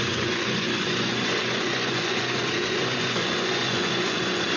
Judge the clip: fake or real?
fake